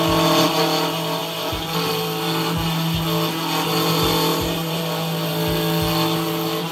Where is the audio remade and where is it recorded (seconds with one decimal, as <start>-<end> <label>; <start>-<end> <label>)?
0.0-4.3 recorded; 4.3-4.8 remade; 4.8-6.7 recorded